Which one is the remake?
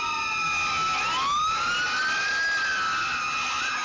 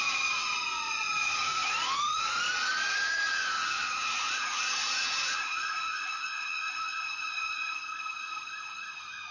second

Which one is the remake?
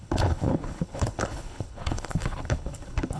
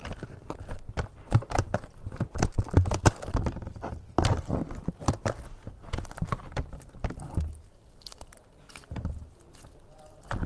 first